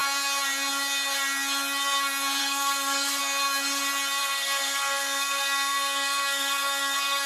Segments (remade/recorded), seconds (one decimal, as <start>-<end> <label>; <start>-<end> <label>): 0.0-2.4 recorded; 2.4-3.2 remade; 3.2-4.2 recorded; 4.2-7.3 remade